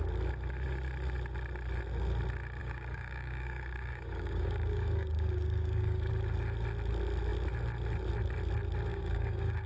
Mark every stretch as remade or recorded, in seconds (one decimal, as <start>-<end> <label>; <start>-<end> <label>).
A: 0.0-2.6 recorded; 2.6-6.1 remade; 6.1-8.9 recorded; 8.9-9.7 remade